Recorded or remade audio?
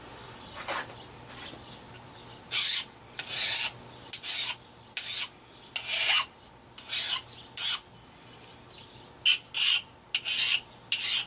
recorded